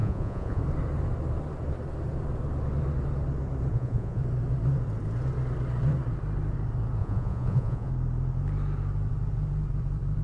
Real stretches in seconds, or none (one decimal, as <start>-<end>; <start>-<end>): 0.6-3.7; 4.2-7.0; 7.9-10.2

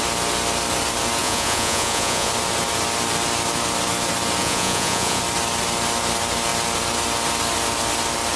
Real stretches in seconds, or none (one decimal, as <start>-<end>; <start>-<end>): 0.0-1.2; 2.3-4.4; 5.2-8.4

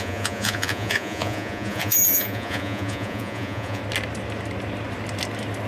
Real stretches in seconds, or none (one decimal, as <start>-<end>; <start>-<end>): 3.8-5.7

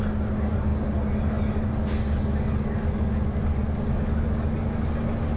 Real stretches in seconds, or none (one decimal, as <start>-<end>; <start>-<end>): 0.0-5.4

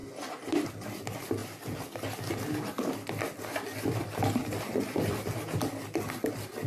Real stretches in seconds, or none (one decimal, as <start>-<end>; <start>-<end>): 0.0-6.7